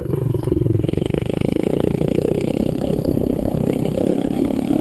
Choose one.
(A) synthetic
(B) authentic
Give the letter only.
A